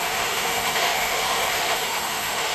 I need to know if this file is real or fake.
fake